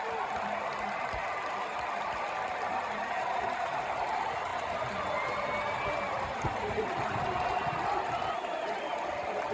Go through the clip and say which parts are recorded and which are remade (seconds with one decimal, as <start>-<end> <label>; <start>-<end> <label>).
0.0-9.5 recorded